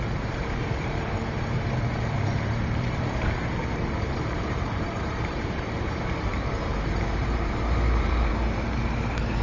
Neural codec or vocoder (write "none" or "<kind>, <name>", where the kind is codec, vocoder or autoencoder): vocoder, BigVGAN v2